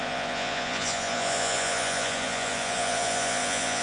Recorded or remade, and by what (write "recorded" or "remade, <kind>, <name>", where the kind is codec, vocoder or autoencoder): remade, vocoder, Vocos